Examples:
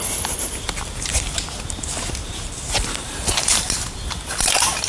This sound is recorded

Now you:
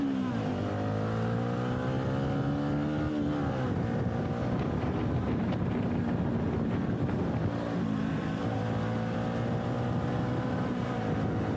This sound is recorded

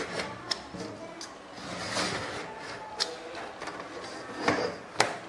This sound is recorded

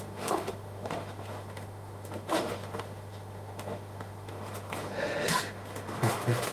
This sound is remade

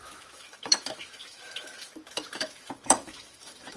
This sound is remade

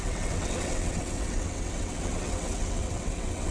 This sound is remade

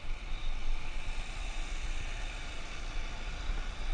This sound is recorded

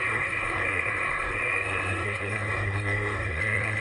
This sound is remade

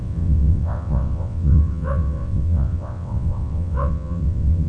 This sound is remade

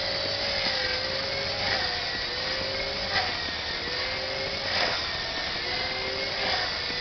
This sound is recorded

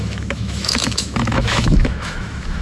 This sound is remade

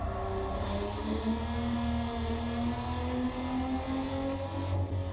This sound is recorded